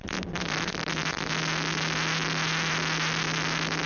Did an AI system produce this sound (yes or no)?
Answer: no